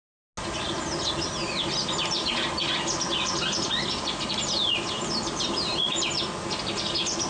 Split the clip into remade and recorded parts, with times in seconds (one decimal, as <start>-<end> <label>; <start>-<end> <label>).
0.0-1.4 recorded; 1.4-5.8 remade; 5.8-7.3 recorded